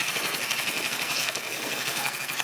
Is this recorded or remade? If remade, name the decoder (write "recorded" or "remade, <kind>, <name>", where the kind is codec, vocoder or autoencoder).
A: remade, codec, SNAC